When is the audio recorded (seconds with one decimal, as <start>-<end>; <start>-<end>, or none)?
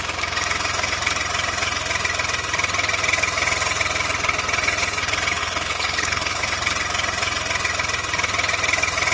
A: 0.0-5.4; 6.4-9.1